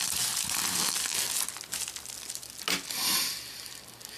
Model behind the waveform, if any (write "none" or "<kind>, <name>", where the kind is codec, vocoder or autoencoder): none